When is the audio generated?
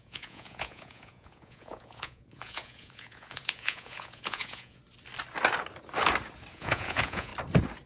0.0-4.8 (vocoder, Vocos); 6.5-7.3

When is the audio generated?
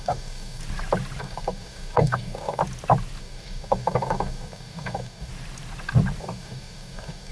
0.0-0.6 (codec, DAC); 1.2-2.6; 3.2-5.3; 6.2-7.3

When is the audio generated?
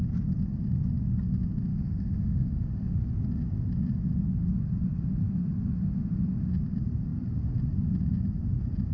1.7-3.0 (autoencoder, DAC-VAE)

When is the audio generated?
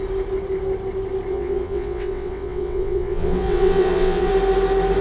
1.3-4.3 (vocoder, WaveNeXt)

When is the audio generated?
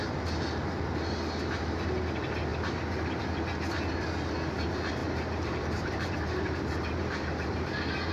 5.0-8.1 (vocoder, BigVGAN v2)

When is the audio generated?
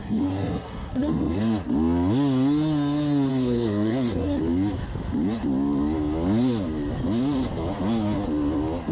0.0-1.4 (codec, SNAC); 3.3-4.4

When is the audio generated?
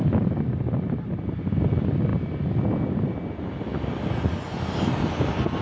none